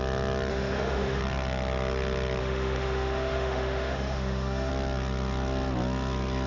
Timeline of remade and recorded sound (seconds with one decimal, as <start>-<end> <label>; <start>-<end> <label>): 0.0-0.5 recorded; 0.5-1.2 remade; 1.2-2.4 recorded; 2.4-4.7 remade; 4.7-6.5 recorded